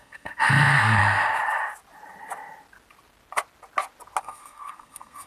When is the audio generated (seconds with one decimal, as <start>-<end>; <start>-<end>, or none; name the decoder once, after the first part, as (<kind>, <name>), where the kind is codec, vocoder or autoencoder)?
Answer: 0.0-1.0 (codec, SNAC); 4.2-5.3